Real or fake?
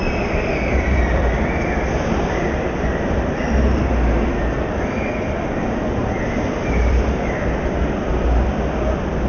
fake